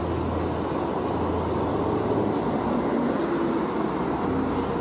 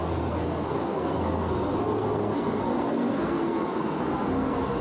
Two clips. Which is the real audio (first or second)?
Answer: first